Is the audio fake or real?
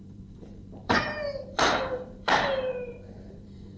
fake